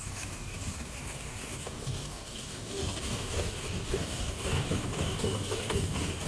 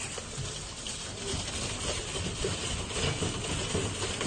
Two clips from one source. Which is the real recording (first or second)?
second